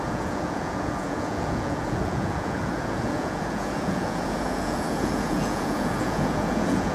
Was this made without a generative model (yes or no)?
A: no